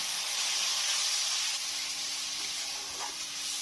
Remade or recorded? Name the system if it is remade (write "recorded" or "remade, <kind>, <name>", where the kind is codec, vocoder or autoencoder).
recorded